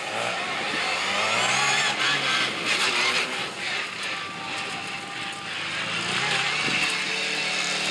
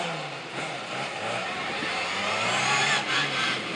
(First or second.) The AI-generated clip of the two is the second